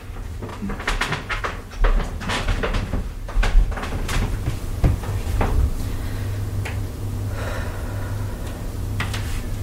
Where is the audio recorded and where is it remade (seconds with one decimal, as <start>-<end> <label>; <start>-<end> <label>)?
0.0-9.6 recorded